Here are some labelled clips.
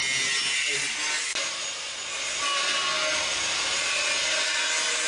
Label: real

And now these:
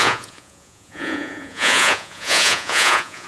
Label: fake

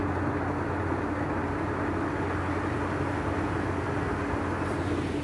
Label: real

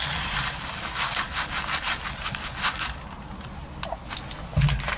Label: real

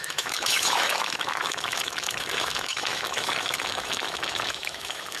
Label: fake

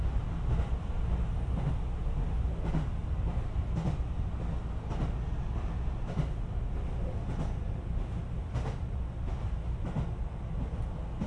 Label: real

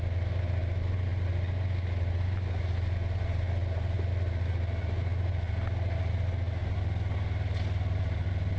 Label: real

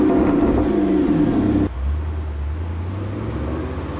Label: real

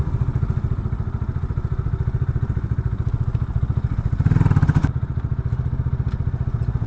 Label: real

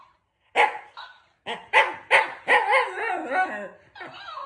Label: real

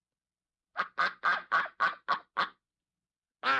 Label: real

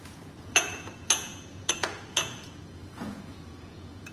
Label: fake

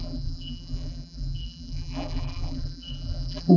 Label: fake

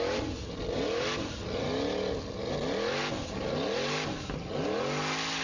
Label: real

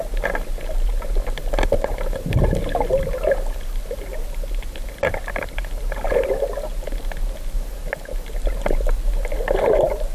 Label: real